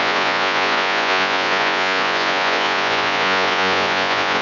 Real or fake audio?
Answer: fake